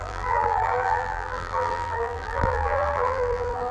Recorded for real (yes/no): no